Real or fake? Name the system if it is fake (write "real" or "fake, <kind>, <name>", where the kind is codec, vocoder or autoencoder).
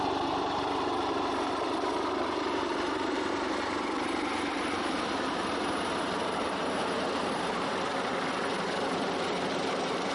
fake, vocoder, BigVGAN v2